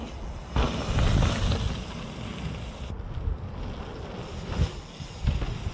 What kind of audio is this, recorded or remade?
recorded